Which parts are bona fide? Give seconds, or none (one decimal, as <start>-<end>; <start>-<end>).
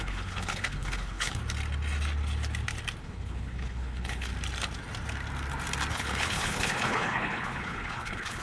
1.4-3.0; 4.3-5.9